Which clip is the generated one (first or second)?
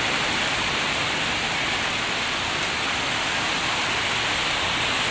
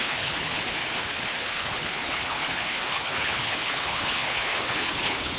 second